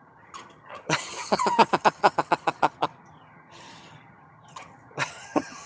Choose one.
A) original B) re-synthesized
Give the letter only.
B